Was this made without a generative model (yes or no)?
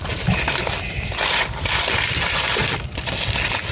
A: yes